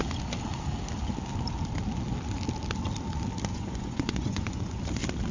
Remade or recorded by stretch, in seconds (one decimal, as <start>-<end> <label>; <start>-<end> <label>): 0.0-3.5 recorded; 3.5-4.8 remade; 4.8-5.3 recorded